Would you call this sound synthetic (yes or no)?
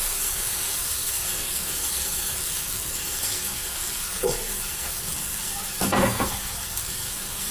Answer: yes